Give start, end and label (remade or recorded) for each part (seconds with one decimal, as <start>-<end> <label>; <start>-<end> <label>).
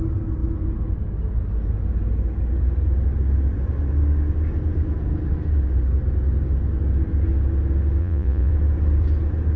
0.0-8.0 recorded; 8.0-8.5 remade; 8.5-9.6 recorded